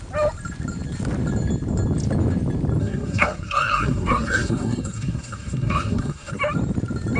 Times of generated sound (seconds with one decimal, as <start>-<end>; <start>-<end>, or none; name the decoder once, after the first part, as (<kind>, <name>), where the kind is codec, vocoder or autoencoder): 2.8-6.4 (codec, SNAC)